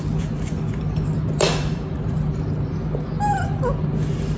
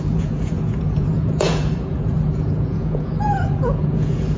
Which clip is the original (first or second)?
first